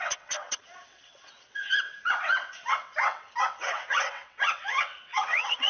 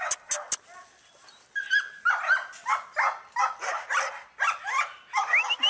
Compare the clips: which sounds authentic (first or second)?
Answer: second